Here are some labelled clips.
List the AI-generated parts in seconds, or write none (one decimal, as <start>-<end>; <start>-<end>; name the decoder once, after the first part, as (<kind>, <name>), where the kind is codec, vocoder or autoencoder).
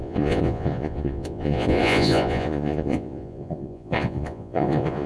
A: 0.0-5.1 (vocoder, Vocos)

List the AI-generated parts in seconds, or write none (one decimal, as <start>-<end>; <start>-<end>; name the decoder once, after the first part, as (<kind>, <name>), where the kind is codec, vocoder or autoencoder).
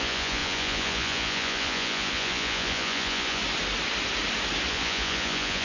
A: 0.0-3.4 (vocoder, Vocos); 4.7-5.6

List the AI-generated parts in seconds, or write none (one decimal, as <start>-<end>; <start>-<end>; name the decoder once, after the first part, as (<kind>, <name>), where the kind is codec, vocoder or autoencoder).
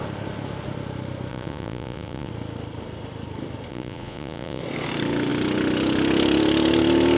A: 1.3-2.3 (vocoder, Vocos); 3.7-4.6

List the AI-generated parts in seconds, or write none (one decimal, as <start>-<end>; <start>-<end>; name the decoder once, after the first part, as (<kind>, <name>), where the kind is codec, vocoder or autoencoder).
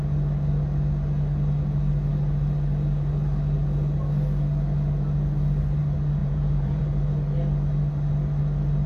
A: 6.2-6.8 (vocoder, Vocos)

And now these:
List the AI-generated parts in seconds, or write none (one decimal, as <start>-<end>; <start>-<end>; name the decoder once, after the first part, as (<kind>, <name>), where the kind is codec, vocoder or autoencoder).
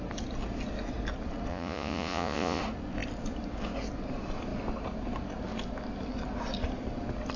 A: 1.5-2.6 (vocoder, Vocos)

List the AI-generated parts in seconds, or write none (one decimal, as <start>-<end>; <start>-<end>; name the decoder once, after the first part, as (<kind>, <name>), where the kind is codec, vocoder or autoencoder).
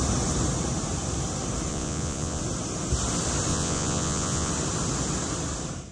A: 1.7-2.4 (vocoder, Vocos); 3.5-4.5